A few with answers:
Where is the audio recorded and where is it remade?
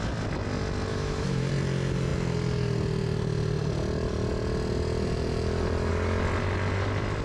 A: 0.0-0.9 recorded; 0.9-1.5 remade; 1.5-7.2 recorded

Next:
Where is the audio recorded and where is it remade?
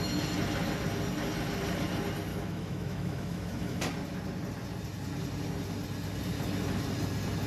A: 0.0-2.3 recorded; 2.3-3.8 remade; 3.8-7.5 recorded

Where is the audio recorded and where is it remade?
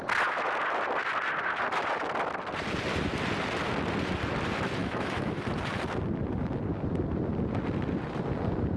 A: 0.0-4.8 recorded; 4.8-5.4 remade; 5.4-8.8 recorded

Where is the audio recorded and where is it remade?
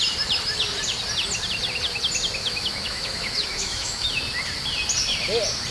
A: 0.0-2.4 recorded; 2.4-4.2 remade; 4.2-5.7 recorded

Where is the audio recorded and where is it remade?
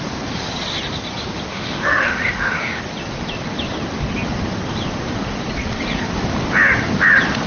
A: 0.0-1.5 recorded; 1.5-2.8 remade; 2.8-7.5 recorded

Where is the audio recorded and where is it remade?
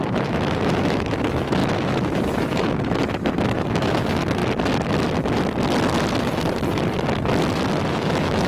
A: 0.0-4.4 remade; 4.4-7.9 recorded; 7.9-8.5 remade